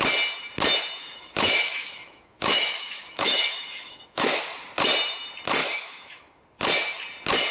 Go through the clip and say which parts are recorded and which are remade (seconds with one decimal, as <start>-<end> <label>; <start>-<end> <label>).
0.0-1.0 recorded; 1.0-4.4 remade; 4.4-5.6 recorded; 5.6-6.4 remade; 6.4-7.5 recorded